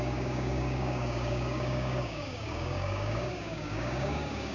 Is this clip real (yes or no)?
no